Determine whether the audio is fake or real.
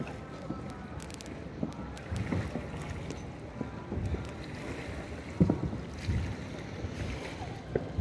real